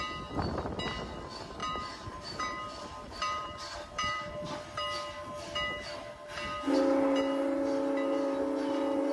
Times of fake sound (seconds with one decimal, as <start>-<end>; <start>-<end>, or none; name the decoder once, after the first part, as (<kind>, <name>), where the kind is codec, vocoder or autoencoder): 1.6-4.3 (vocoder, BigVGAN v2)